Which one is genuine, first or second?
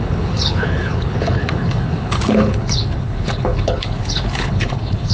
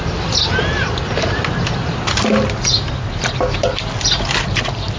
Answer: second